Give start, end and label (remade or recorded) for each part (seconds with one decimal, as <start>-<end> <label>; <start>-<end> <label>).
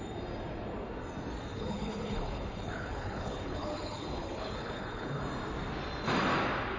0.0-1.5 recorded; 1.5-5.2 remade; 5.2-6.8 recorded